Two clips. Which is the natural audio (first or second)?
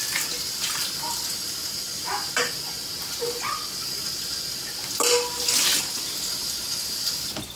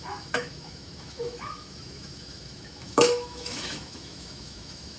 first